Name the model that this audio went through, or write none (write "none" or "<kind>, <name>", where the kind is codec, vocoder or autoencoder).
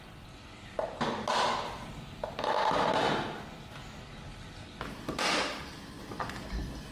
none